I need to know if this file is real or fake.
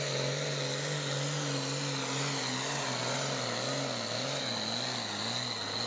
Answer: real